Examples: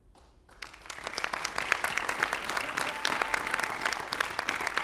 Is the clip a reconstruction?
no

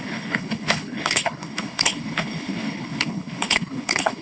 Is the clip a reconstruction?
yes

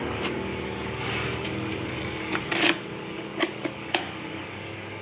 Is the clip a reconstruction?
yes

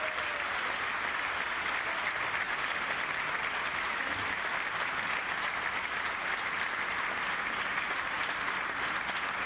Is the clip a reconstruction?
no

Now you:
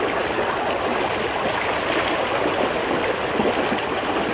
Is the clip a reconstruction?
no